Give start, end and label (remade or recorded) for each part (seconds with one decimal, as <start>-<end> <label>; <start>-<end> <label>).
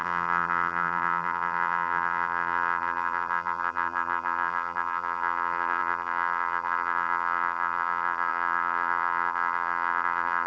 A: 0.0-10.5 remade